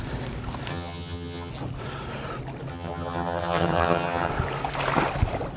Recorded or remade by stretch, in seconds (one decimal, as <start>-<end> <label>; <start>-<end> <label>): 0.0-0.7 recorded; 0.7-1.5 remade; 1.5-2.7 recorded; 2.7-4.3 remade; 4.3-5.6 recorded